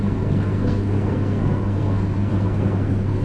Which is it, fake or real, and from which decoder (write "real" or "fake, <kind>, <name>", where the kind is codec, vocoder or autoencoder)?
fake, codec, SNAC